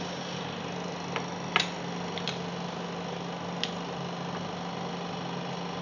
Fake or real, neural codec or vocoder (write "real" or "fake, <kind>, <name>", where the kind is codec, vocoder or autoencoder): real